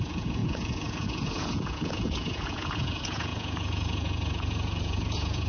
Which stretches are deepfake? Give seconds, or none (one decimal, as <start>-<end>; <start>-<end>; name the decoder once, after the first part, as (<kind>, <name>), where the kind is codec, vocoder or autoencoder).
0.0-5.5 (vocoder, Vocos)